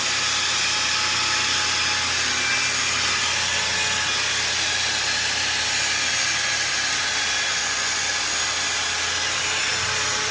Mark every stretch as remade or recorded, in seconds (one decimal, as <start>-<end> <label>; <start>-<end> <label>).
0.0-7.5 recorded; 7.5-8.1 remade; 8.1-10.3 recorded

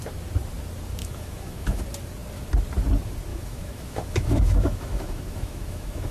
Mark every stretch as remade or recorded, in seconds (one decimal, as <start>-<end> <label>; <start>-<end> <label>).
0.0-1.0 recorded; 1.0-1.8 remade; 1.8-3.3 recorded; 3.3-6.1 remade

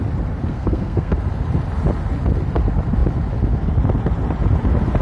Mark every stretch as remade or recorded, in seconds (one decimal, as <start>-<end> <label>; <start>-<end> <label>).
0.0-0.5 recorded; 0.5-1.1 remade; 1.1-5.0 recorded